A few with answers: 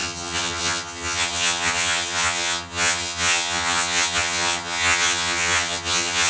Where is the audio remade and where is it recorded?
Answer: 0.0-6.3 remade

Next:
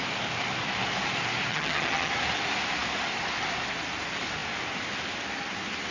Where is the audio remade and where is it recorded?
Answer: 0.0-1.5 recorded; 1.5-2.1 remade; 2.1-5.9 recorded

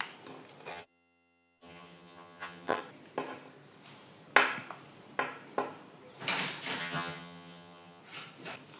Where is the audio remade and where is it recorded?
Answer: 0.0-0.7 recorded; 0.7-2.8 remade; 2.8-6.8 recorded; 6.8-8.0 remade; 8.0-8.8 recorded